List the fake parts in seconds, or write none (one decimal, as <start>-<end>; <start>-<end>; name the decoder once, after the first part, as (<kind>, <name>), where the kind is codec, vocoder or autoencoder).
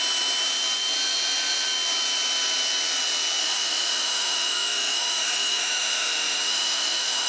3.4-7.3 (autoencoder, DAC-VAE)